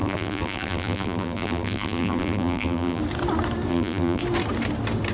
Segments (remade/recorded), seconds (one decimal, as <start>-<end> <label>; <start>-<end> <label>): 0.0-3.0 remade; 3.0-3.7 recorded; 3.7-4.2 remade; 4.2-5.1 recorded